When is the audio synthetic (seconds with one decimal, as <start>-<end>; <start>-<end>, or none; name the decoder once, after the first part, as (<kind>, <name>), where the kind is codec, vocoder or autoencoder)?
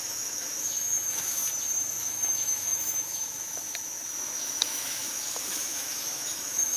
0.0-1.4 (autoencoder, DAC-VAE); 1.9-6.8